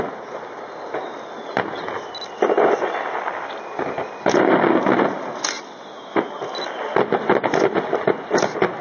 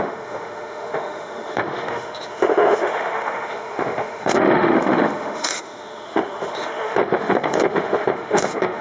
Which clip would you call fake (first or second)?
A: second